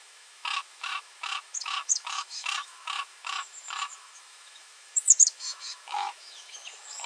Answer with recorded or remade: remade